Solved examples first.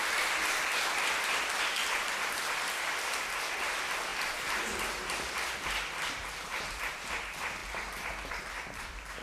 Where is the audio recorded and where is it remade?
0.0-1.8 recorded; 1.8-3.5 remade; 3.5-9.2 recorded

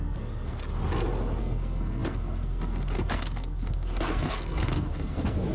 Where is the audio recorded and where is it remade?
0.0-0.6 remade; 0.6-1.4 recorded; 1.4-5.5 remade

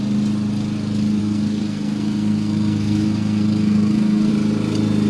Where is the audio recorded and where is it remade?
0.0-1.2 recorded; 1.2-4.3 remade; 4.3-5.1 recorded

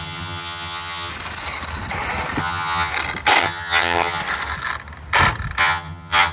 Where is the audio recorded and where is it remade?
0.0-1.1 remade; 1.1-2.4 recorded; 2.4-2.9 remade; 2.9-3.4 recorded; 3.4-4.2 remade; 4.2-5.6 recorded; 5.6-6.3 remade

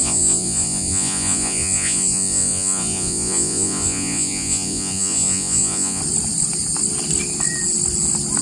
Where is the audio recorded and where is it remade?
0.0-6.0 remade; 6.0-8.4 recorded

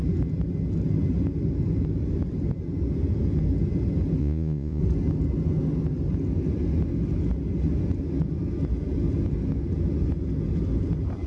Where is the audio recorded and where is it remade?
0.0-4.2 recorded; 4.2-4.8 remade; 4.8-11.3 recorded